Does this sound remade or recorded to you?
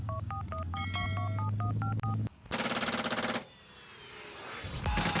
recorded